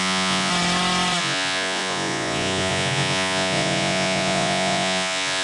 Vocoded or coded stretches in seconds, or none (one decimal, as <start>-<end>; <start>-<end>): 0.0-0.5; 1.2-5.4